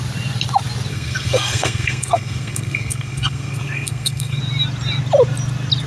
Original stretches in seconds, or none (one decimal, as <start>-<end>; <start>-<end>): 0.0-0.9; 4.4-5.9